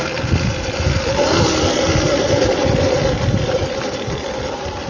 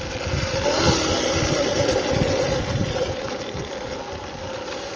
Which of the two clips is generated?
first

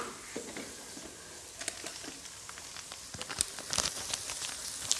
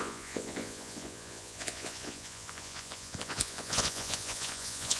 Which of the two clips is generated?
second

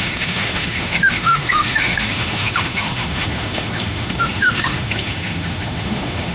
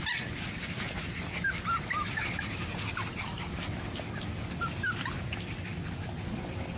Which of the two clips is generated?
first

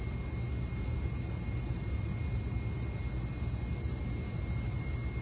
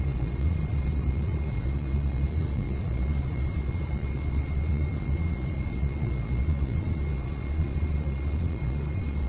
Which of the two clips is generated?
second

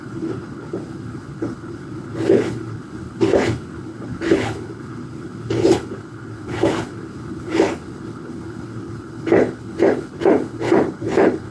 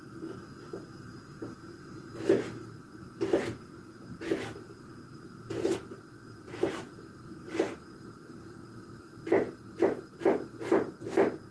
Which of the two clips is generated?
first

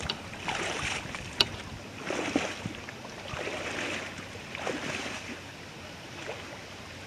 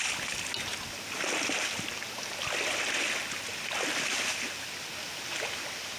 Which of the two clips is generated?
first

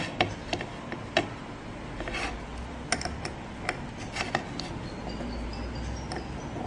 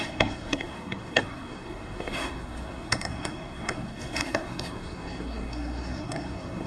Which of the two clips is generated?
second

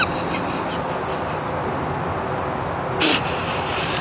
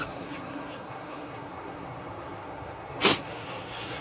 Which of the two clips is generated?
second